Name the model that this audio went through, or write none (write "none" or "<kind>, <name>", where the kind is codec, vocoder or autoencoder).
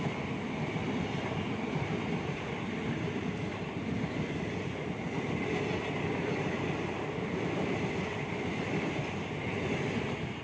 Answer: none